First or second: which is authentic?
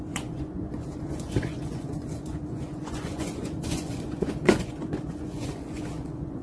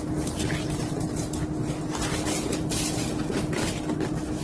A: second